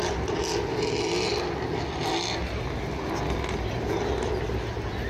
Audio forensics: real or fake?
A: real